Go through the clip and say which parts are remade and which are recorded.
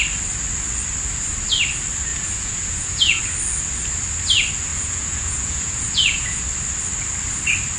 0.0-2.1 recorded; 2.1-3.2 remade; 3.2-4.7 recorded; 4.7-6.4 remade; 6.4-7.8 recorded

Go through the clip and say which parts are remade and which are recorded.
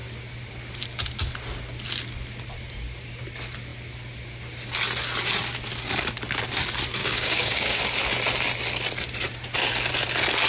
0.0-7.0 recorded; 7.0-7.8 remade; 7.8-10.5 recorded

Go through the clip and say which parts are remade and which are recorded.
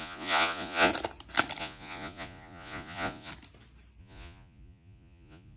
0.0-0.9 remade; 0.9-1.6 recorded; 1.6-3.3 remade; 3.3-4.0 recorded; 4.0-5.6 remade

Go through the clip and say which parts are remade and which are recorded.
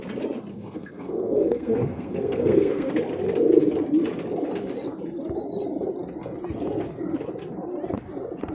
0.0-0.5 recorded; 0.5-2.9 remade; 2.9-8.5 recorded